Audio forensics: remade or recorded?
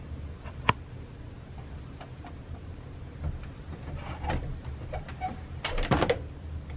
recorded